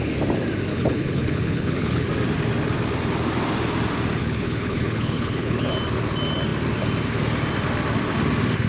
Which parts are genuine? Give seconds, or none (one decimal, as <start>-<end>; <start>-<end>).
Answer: 0.0-0.7; 2.1-4.2; 5.7-8.7